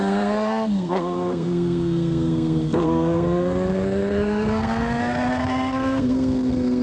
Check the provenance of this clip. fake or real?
fake